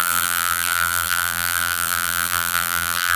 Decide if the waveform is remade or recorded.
remade